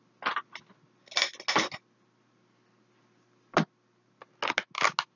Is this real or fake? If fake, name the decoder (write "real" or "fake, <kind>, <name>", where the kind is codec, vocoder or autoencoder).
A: real